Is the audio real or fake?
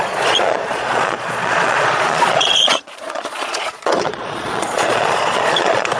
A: fake